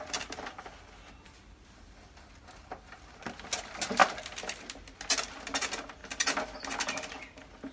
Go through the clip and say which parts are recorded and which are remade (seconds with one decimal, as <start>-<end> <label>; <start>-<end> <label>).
0.0-7.7 recorded